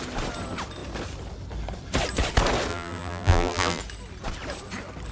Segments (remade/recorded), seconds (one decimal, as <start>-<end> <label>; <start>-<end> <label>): 0.0-2.7 recorded; 2.7-3.8 remade; 3.8-5.1 recorded